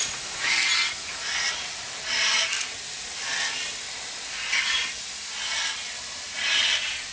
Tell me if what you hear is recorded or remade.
recorded